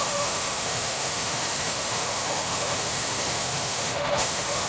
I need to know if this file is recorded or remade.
remade